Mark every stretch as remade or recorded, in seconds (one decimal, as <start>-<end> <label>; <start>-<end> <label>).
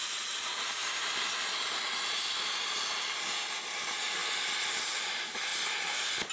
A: 0.0-0.8 remade; 0.8-3.5 recorded; 3.5-4.2 remade; 4.2-4.8 recorded; 4.8-5.5 remade; 5.5-6.3 recorded